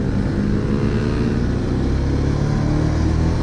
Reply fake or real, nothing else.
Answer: real